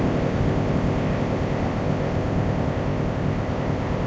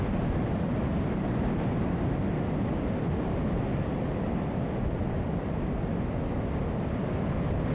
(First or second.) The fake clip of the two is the first